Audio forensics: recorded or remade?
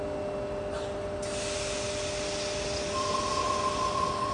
recorded